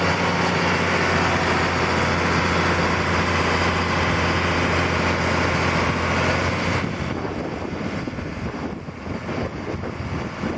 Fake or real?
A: real